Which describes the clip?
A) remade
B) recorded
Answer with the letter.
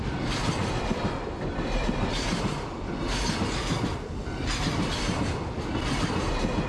B